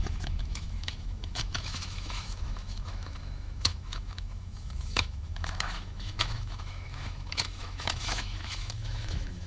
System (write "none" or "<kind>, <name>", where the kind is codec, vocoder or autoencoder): autoencoder, DAC-VAE